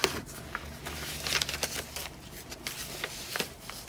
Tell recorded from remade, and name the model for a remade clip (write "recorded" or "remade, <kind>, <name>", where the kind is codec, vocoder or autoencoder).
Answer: recorded